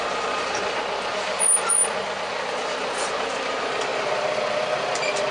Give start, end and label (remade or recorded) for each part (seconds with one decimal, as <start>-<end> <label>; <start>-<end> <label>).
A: 0.0-1.8 recorded; 1.8-3.0 remade; 3.0-3.9 recorded; 3.9-5.3 remade